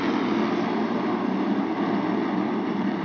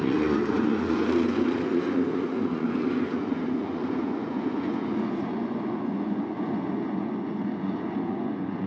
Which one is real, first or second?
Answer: first